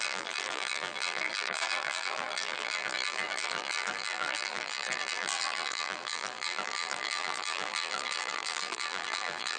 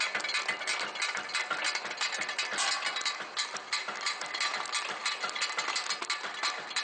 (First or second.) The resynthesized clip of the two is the first